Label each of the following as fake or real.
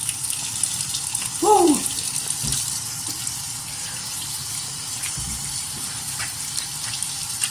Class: fake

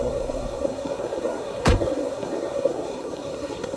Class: fake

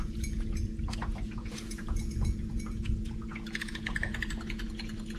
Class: fake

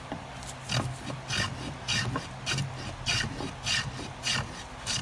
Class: real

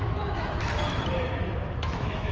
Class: fake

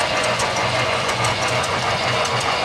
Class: fake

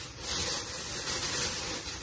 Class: real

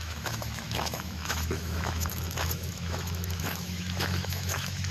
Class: fake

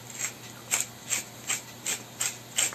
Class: real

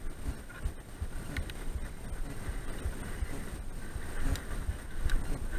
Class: real